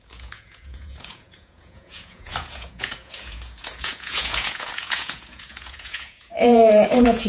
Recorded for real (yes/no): no